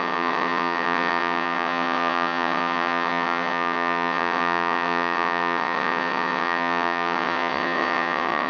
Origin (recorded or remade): remade